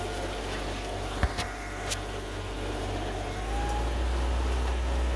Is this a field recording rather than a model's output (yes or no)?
yes